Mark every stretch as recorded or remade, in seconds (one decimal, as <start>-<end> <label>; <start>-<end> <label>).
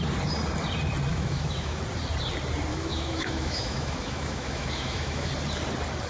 0.0-1.1 recorded; 1.1-1.8 remade; 1.8-2.7 recorded; 2.7-5.3 remade; 5.3-6.1 recorded